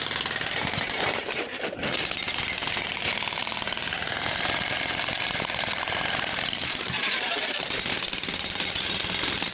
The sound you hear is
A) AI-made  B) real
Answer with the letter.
A